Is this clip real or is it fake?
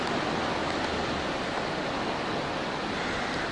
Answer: real